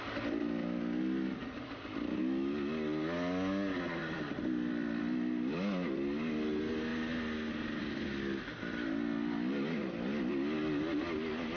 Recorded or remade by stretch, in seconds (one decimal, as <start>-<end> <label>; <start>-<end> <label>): 0.0-1.4 recorded; 1.4-2.2 remade; 2.2-4.0 recorded; 4.0-5.0 remade; 5.0-11.6 recorded